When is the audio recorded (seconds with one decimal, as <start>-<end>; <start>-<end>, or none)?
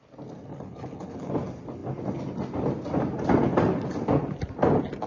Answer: 0.0-0.5; 1.3-5.1